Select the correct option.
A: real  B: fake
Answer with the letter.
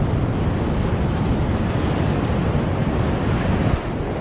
A